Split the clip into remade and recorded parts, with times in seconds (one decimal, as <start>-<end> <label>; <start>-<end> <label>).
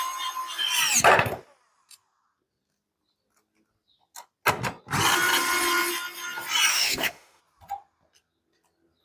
0.0-6.7 recorded; 6.7-7.4 remade; 7.4-9.0 recorded